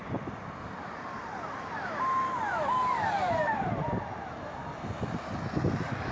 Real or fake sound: real